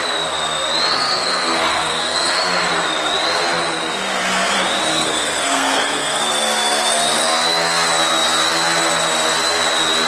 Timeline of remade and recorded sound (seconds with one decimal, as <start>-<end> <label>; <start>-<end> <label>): 0.0-0.9 recorded; 0.9-2.4 remade; 2.4-4.9 recorded; 4.9-6.2 remade; 6.2-10.1 recorded